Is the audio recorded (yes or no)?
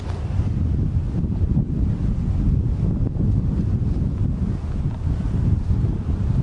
yes